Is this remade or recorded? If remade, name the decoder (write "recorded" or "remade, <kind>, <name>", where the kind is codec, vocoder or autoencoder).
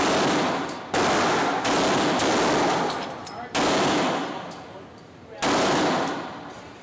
recorded